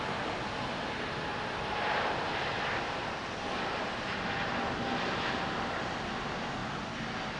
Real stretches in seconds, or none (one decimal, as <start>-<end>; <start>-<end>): 0.0-1.3; 4.0-7.4